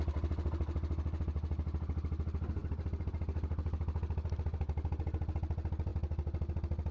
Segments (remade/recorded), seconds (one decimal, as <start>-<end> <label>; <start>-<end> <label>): 0.0-6.9 recorded